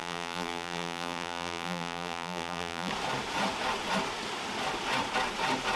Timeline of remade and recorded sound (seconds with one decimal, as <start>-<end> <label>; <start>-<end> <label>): 0.0-2.9 remade; 2.9-5.8 recorded